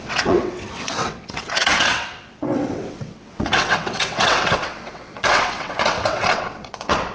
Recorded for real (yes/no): no